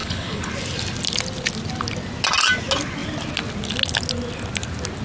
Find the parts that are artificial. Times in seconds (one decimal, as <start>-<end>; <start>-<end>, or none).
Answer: 0.0-0.5